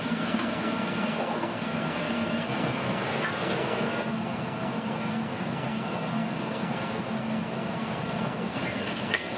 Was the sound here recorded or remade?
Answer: remade